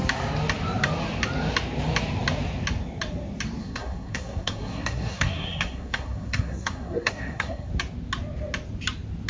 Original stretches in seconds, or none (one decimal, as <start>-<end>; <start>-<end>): 0.0-3.6; 7.7-9.3